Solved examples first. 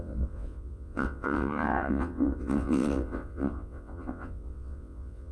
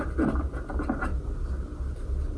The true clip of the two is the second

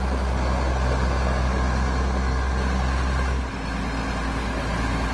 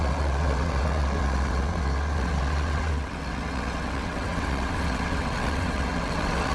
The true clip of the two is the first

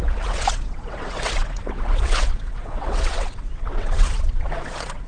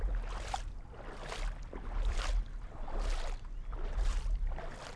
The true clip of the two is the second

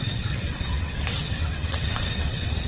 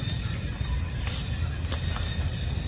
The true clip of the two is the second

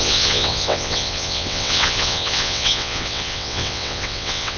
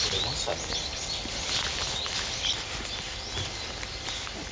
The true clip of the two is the second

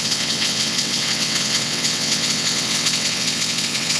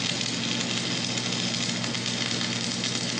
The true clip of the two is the second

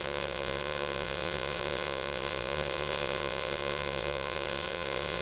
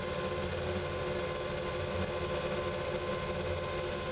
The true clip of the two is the second